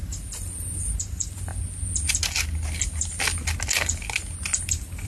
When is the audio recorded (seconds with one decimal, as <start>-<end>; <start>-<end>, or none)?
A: 1.5-4.6